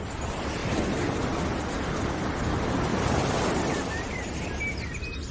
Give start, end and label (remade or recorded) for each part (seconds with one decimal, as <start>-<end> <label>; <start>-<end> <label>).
0.0-0.6 recorded; 0.6-1.2 remade; 1.2-2.9 recorded; 2.9-4.3 remade; 4.3-5.3 recorded